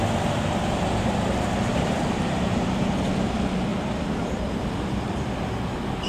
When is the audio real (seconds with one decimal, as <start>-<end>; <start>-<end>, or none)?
0.0-3.7; 5.4-6.1